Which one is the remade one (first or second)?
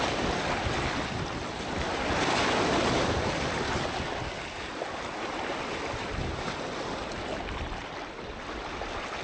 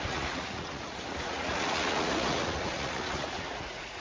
second